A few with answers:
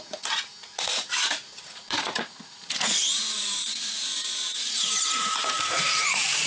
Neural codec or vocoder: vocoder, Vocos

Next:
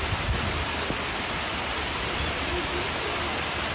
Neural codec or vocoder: none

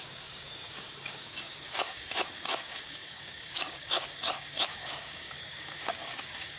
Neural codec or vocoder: codec, DAC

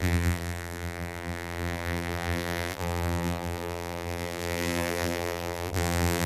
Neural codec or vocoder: vocoder, BigVGAN v2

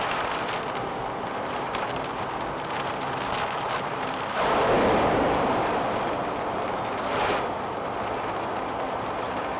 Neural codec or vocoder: none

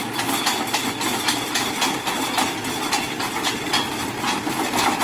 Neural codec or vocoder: none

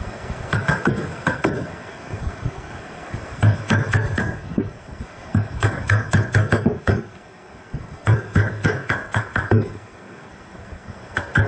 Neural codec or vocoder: codec, SNAC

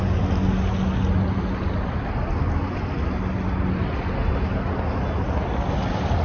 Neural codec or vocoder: none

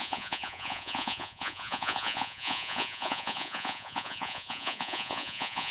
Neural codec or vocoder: vocoder, Vocos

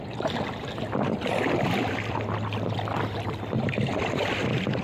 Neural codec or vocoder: vocoder, BigVGAN v2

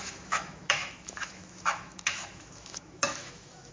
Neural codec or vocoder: autoencoder, DAC-VAE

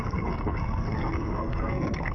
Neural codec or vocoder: codec, SNAC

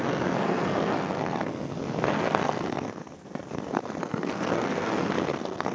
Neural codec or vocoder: codec, SNAC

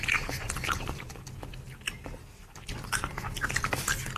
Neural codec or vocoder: none